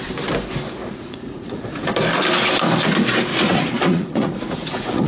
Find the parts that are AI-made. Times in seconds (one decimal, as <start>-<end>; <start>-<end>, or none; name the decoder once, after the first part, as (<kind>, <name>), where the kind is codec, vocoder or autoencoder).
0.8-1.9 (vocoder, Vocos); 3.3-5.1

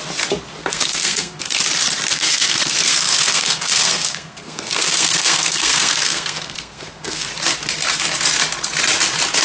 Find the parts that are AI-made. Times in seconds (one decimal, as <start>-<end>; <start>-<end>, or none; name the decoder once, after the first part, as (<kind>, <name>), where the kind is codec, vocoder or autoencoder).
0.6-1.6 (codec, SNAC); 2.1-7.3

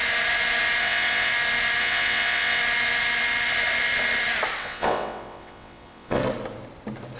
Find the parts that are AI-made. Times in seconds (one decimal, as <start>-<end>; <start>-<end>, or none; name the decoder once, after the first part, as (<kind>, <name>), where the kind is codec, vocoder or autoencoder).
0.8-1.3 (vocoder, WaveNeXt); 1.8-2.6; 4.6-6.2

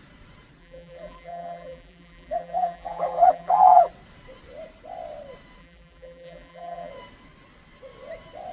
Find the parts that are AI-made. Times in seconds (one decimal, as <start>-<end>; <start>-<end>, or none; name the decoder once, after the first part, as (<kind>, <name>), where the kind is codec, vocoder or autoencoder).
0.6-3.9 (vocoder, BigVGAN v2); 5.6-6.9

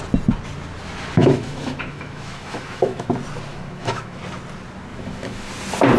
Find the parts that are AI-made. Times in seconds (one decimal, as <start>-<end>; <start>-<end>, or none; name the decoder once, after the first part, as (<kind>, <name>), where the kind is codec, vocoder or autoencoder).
1.2-3.1 (autoencoder, DAC-VAE); 3.5-4.2; 4.9-5.5